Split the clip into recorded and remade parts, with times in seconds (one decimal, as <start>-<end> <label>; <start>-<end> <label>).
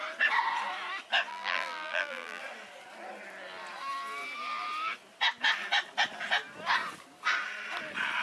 0.0-1.3 recorded; 1.3-2.4 remade; 2.4-8.2 recorded